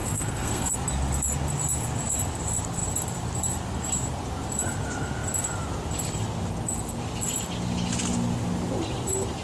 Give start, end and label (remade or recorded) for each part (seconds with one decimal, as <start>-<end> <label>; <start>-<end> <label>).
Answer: 0.0-0.7 remade; 0.7-9.4 recorded